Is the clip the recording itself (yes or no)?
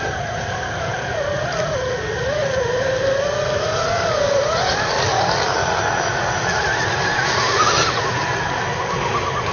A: yes